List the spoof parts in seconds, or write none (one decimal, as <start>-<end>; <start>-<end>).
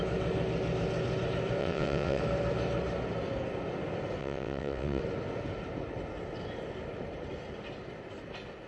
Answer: 1.6-2.2; 4.2-5.0